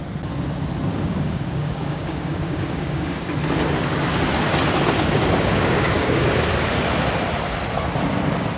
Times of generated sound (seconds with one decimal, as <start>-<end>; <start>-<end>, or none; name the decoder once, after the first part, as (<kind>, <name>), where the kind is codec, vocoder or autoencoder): 0.9-3.2 (codec, DAC); 5.2-6.2